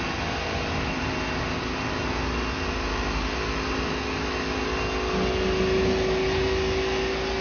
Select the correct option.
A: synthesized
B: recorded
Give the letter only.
B